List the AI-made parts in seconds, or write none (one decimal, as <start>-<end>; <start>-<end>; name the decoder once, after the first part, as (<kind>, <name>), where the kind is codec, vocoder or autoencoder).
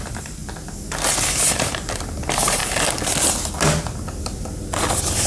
0.0-0.4 (vocoder, BigVGAN v2); 1.1-2.6